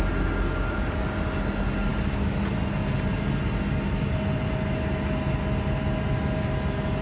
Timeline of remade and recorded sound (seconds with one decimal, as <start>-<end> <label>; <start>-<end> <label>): 0.0-7.0 recorded